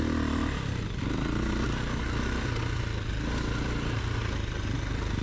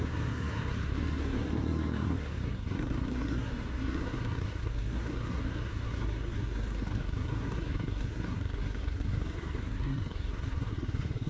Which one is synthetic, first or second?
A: second